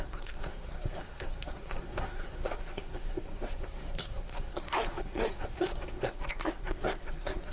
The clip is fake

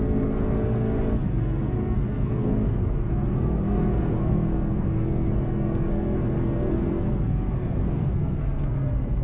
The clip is fake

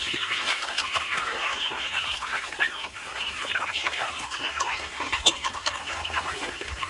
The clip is fake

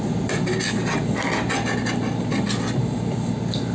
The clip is real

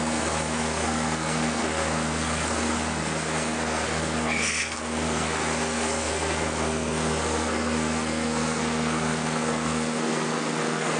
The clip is fake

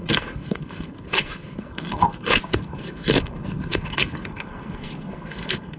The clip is fake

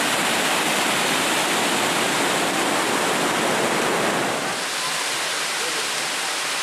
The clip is real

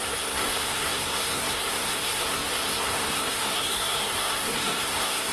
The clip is fake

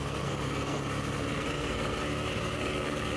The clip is fake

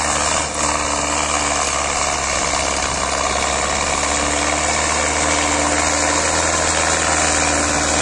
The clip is real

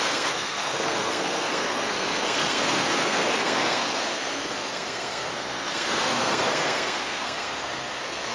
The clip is fake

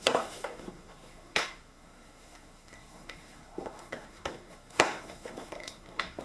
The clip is fake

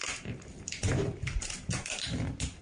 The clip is real